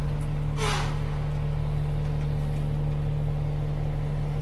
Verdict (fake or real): real